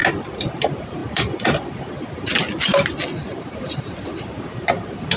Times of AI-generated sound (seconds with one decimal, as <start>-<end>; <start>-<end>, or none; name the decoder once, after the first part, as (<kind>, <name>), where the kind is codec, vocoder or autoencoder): 0.5-2.4 (vocoder, BigVGAN v2); 3.2-5.2